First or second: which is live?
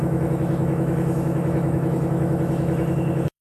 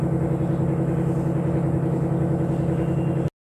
second